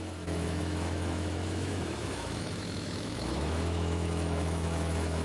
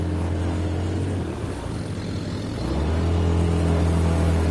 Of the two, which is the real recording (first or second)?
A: second